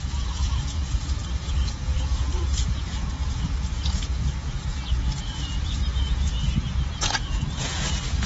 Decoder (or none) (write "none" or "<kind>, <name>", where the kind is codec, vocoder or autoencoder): vocoder, Vocos